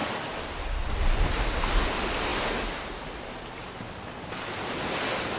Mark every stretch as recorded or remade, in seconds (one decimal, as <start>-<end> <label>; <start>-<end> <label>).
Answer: 0.0-5.4 recorded